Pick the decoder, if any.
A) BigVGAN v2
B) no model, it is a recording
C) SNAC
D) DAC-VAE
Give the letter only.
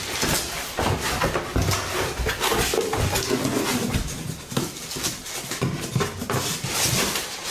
B